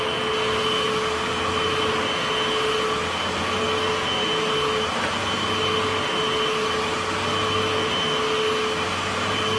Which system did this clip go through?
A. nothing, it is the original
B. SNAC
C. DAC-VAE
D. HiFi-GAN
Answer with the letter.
A